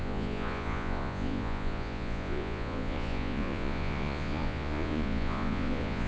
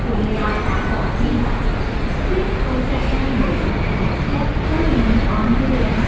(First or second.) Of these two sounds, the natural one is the second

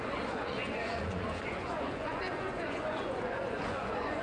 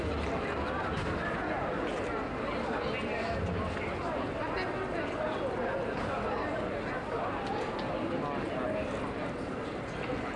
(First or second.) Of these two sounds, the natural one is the second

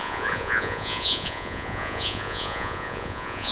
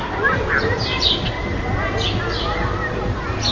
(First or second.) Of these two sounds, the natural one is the second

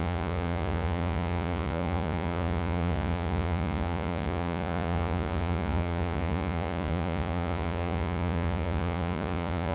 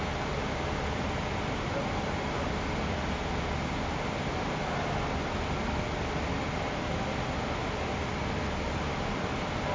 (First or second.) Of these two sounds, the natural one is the second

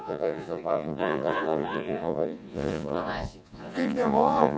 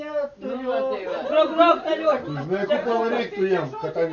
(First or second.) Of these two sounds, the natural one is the second